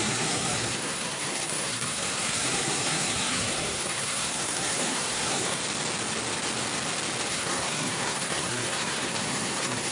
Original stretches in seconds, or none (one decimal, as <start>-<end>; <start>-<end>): 5.6-7.3